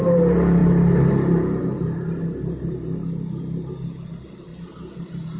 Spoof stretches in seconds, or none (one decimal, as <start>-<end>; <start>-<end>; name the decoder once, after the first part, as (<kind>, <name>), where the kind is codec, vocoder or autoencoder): 4.5-5.4 (vocoder, BigVGAN v2)